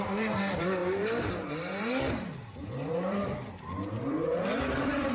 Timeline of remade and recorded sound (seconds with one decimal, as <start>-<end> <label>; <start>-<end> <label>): 0.0-5.1 remade